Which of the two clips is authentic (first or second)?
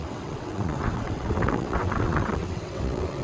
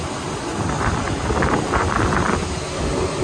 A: second